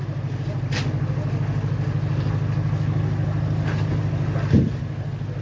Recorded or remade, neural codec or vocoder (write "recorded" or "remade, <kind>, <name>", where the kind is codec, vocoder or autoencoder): recorded